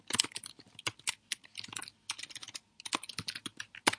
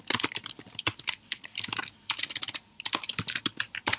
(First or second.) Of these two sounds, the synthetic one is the second